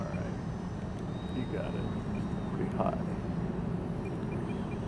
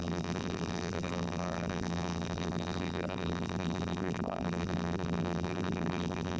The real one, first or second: first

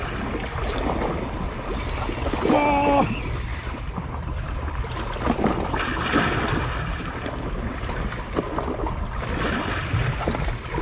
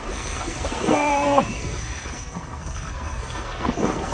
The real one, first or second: first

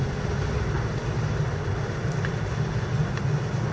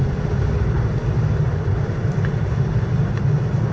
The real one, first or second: first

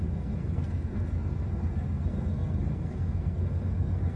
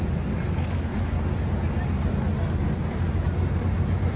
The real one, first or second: second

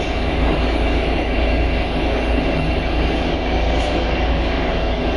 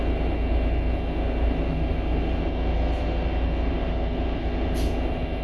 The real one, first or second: second